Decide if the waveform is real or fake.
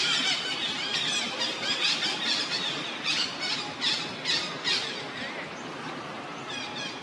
fake